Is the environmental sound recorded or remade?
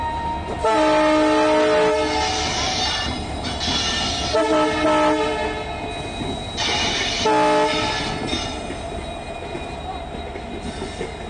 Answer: recorded